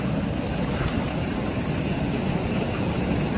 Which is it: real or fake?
real